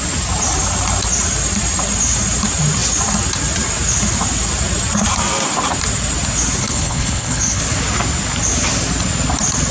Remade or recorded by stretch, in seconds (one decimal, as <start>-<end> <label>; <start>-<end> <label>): 0.0-6.6 recorded; 6.6-7.6 remade; 7.6-9.7 recorded